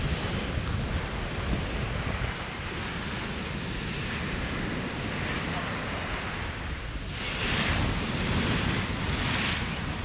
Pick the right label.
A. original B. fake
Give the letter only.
A